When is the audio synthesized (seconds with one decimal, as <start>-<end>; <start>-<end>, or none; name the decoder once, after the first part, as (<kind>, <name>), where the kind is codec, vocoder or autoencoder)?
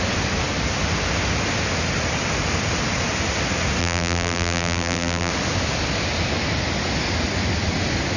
3.8-5.3 (vocoder, BigVGAN v2)